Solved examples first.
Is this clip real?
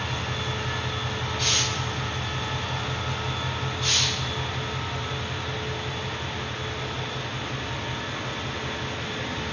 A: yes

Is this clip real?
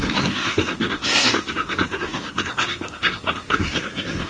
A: no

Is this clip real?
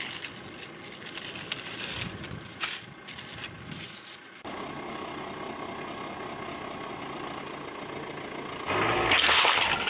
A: yes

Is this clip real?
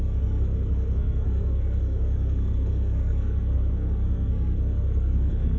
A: no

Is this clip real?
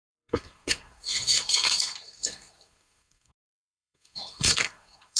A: no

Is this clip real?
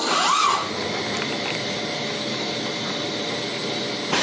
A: yes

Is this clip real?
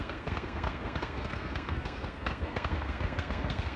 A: no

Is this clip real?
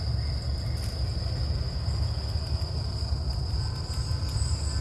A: yes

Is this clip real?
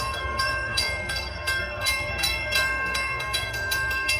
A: no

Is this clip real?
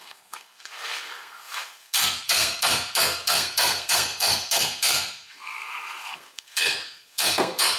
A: no